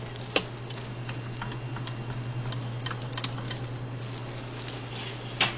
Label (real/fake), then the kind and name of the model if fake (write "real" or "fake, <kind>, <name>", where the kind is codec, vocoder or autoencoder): real